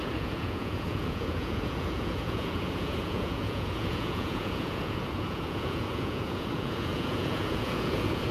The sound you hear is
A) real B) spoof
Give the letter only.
B